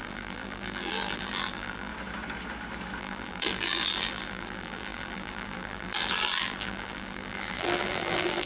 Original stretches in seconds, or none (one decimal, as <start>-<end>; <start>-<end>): 1.9-3.0